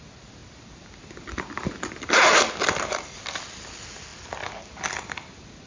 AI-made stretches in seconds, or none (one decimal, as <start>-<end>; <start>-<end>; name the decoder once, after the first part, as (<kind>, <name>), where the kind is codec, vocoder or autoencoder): none